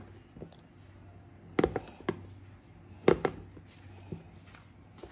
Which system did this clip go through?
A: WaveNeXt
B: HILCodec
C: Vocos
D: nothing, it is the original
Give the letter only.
D